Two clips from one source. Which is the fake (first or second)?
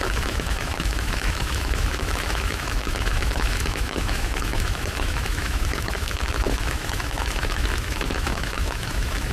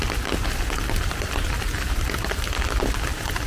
first